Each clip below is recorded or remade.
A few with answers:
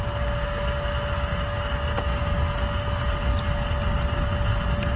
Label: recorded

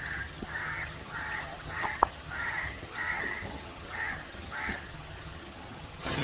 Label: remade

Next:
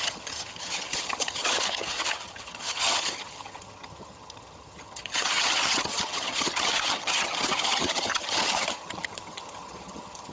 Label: remade